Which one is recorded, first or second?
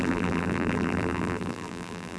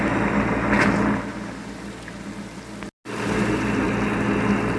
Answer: second